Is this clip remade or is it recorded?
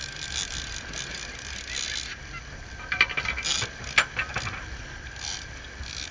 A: recorded